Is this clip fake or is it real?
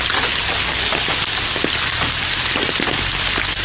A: real